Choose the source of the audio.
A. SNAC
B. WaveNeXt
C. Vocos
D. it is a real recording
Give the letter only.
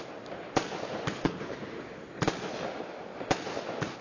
D